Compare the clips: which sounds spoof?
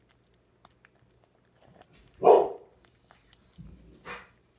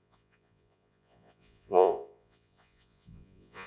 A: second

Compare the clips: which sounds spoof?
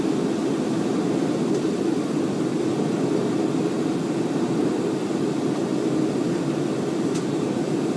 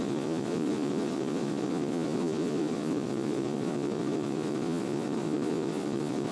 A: second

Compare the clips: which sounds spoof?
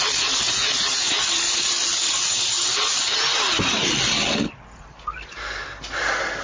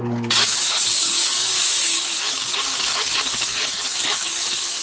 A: second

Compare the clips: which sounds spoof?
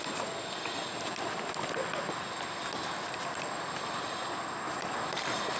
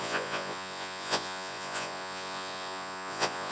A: second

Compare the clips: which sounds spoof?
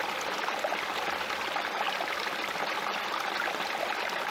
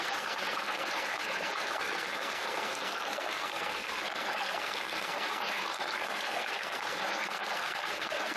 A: second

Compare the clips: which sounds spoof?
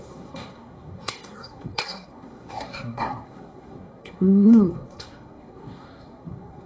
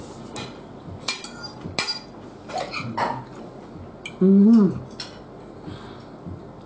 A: first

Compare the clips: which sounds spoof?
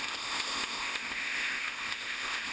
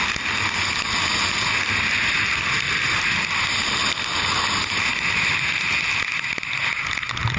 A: first